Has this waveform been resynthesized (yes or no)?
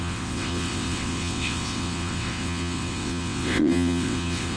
yes